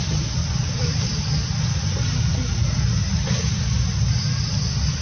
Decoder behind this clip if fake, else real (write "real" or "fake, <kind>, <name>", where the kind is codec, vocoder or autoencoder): real